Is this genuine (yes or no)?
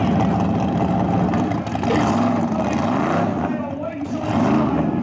yes